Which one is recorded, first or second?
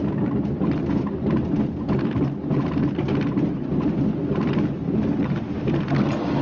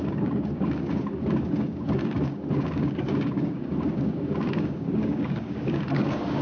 first